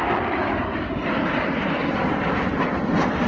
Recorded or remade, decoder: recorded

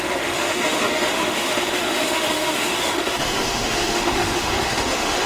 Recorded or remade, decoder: remade, autoencoder, DAC-VAE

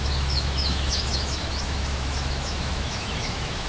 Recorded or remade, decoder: remade, autoencoder, DAC-VAE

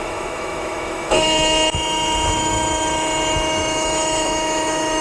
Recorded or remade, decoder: remade, autoencoder, DAC-VAE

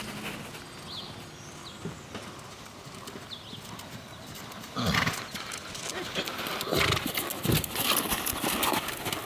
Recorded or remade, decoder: recorded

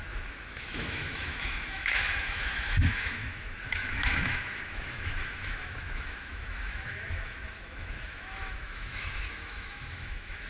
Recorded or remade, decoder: remade, autoencoder, DAC-VAE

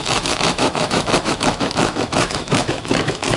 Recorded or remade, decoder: remade, autoencoder, DAC-VAE